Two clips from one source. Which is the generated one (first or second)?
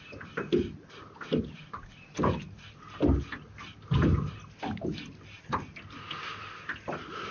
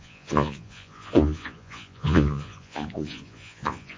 second